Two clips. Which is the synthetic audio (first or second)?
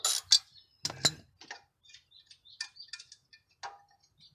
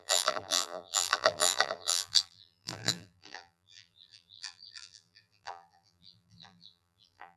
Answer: second